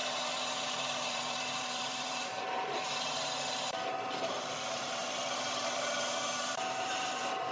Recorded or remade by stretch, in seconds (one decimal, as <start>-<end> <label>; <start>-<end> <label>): 0.0-7.5 remade